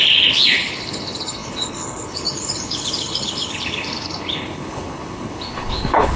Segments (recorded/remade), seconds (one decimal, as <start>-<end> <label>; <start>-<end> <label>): 0.0-6.2 remade